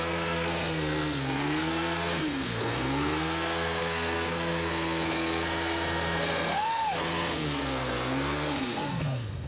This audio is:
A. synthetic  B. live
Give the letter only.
A